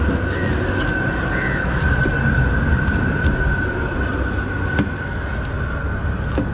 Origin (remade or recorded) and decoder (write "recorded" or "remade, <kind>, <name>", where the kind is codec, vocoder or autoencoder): recorded